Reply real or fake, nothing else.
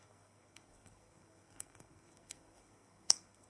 fake